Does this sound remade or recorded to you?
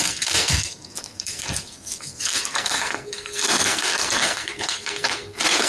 remade